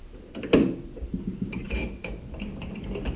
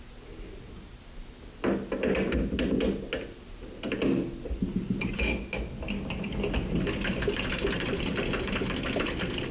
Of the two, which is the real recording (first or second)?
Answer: second